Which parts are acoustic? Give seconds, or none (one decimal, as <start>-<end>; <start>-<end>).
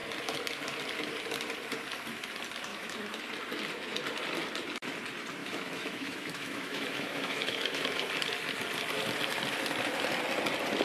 0.0-2.7; 3.2-5.4; 8.1-10.8